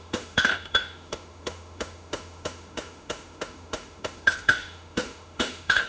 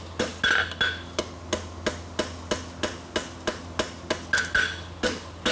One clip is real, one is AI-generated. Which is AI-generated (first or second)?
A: first